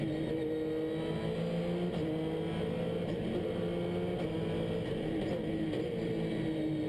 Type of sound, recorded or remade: recorded